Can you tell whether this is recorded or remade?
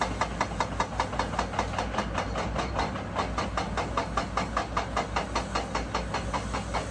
recorded